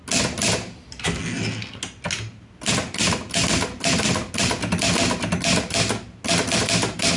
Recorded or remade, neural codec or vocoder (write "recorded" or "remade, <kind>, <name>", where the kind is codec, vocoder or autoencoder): recorded